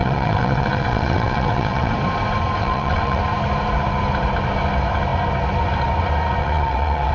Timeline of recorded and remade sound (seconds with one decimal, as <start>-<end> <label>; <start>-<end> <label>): 0.0-1.9 remade; 1.9-2.6 recorded; 2.6-3.2 remade; 3.2-6.4 recorded; 6.4-7.1 remade